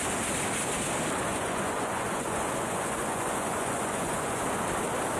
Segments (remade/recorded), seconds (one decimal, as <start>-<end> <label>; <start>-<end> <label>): 0.0-1.3 recorded; 1.3-4.4 remade; 4.4-5.2 recorded